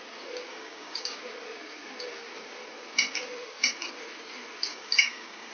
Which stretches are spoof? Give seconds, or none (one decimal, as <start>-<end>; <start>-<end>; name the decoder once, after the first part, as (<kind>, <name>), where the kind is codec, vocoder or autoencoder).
0.5-1.2 (codec, DAC); 4.7-5.5